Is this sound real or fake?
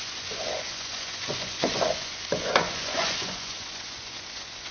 fake